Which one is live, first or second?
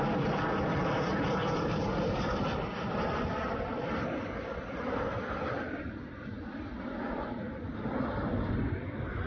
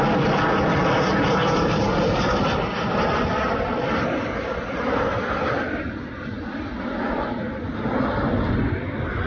second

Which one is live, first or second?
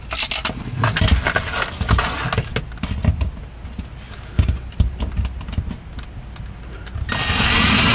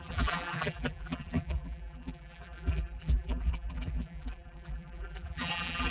first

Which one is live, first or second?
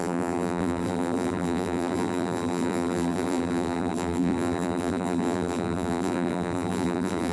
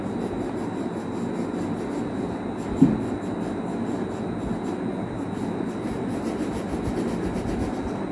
second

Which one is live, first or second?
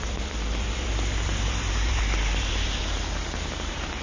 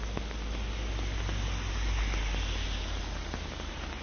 second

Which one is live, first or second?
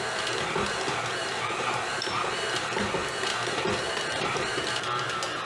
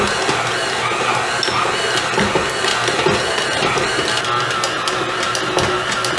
second